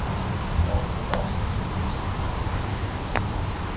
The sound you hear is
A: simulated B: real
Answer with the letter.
B